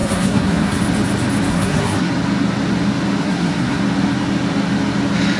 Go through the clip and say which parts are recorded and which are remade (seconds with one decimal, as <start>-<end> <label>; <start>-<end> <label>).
0.0-0.8 remade; 0.8-1.5 recorded; 1.5-2.1 remade; 2.1-3.2 recorded; 3.2-3.8 remade; 3.8-5.4 recorded

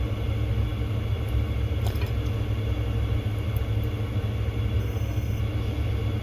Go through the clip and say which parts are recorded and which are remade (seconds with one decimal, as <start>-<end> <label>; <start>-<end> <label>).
0.0-4.8 recorded; 4.8-5.4 remade; 5.4-6.2 recorded

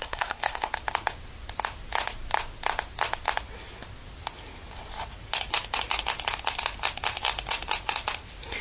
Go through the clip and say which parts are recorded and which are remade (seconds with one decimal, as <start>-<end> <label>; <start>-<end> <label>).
0.0-0.7 remade; 0.7-8.6 recorded

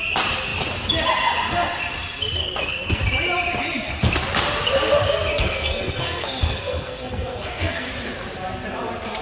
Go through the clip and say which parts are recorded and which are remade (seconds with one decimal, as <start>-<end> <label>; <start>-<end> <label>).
0.0-2.4 recorded; 2.4-3.0 remade; 3.0-5.3 recorded; 5.3-7.9 remade; 7.9-9.2 recorded

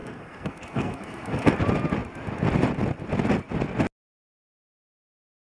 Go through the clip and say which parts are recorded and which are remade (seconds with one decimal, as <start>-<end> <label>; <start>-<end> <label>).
0.0-1.5 remade; 1.5-5.5 recorded

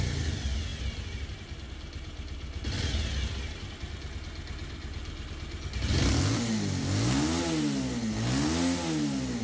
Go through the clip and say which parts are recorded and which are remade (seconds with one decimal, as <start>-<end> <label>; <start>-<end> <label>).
0.0-9.4 recorded